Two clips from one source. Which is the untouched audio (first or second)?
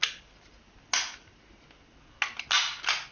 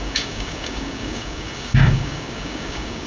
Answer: first